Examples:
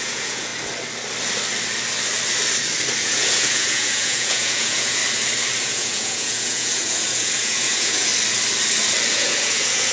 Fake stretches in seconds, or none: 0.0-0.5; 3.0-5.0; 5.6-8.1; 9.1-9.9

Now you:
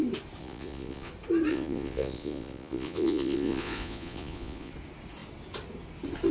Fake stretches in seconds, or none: 0.4-1.1; 1.5-4.7

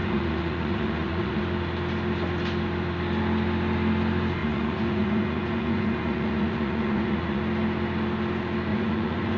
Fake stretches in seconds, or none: 0.0-1.4; 4.4-7.4; 8.7-9.4

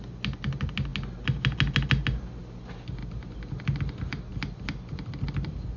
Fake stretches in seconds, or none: none

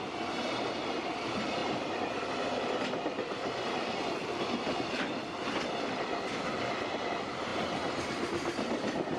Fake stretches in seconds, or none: none

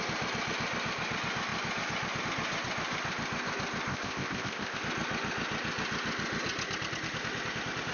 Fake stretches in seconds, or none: 3.9-4.8

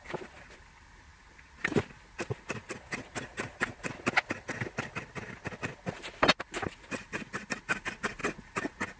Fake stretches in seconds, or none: none

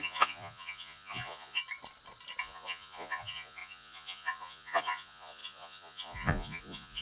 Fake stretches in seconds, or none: 0.0-1.6; 2.4-7.0